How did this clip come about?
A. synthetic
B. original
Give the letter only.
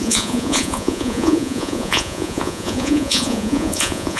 A